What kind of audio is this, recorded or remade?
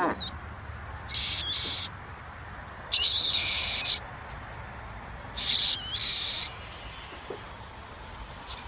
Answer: recorded